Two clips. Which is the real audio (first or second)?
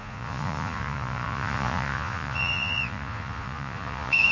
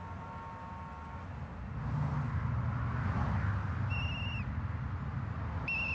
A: second